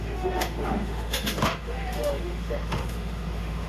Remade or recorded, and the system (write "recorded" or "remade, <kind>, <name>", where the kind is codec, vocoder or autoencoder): remade, autoencoder, DAC-VAE